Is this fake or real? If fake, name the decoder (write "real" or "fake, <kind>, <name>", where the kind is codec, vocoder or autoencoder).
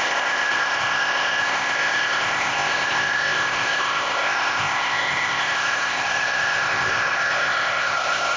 fake, codec, ZipCodec